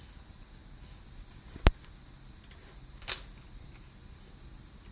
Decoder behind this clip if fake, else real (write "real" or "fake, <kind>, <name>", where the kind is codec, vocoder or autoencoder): real